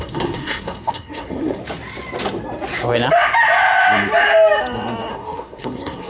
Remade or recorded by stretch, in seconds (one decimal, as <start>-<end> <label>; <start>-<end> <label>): 0.0-1.6 remade; 1.6-5.1 recorded; 5.1-6.1 remade